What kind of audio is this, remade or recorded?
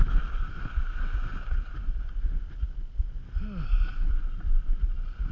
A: recorded